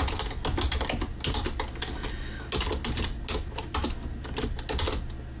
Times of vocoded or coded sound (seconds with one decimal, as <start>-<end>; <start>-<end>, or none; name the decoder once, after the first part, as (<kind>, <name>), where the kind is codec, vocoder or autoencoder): none